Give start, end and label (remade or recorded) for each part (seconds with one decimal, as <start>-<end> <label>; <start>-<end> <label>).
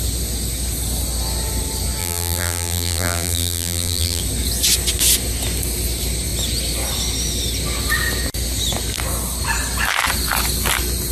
0.0-2.0 recorded; 2.0-4.2 remade; 4.2-11.1 recorded